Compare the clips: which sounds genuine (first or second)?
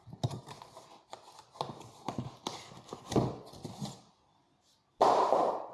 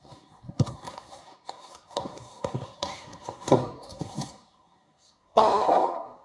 first